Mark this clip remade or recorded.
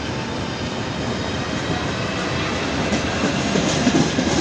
recorded